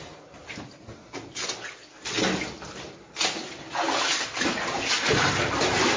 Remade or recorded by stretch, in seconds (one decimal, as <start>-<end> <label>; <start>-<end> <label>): 0.0-6.0 recorded